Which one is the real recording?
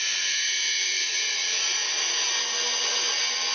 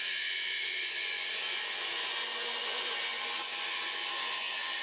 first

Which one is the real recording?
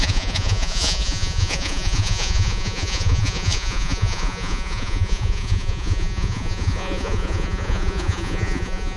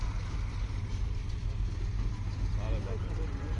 second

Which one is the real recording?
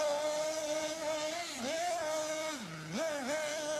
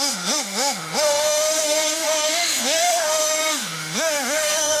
first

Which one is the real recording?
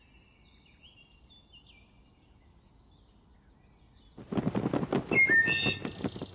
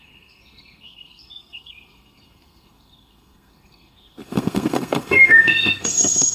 first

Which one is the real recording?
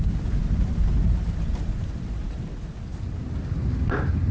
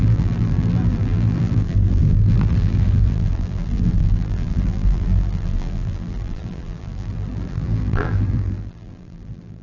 first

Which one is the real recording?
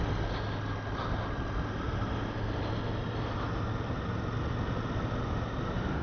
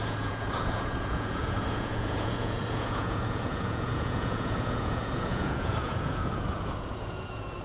first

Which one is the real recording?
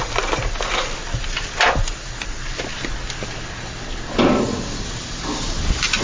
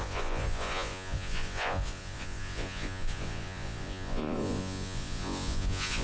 first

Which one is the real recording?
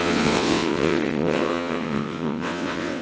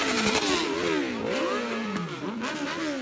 second